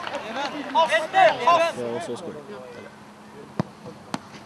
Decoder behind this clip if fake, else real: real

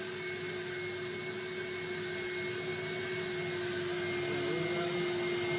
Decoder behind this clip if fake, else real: real